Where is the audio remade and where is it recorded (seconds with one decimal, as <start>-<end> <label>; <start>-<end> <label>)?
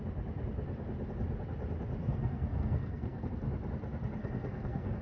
0.0-2.0 recorded; 2.0-3.3 remade; 3.3-4.2 recorded; 4.2-5.0 remade